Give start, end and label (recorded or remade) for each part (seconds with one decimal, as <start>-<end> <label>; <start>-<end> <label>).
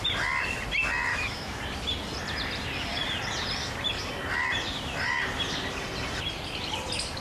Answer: 0.0-1.1 recorded; 1.1-1.6 remade; 1.6-7.2 recorded